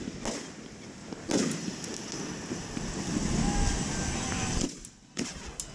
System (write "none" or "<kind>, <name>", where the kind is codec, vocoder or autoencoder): none